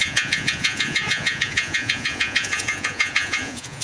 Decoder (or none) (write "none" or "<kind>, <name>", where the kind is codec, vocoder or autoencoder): vocoder, Vocos